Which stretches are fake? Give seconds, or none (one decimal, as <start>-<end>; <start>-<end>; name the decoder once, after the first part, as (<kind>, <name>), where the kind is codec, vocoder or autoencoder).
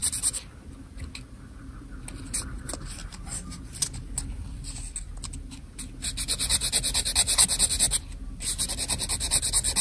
none